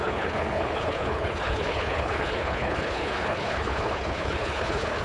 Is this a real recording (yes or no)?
no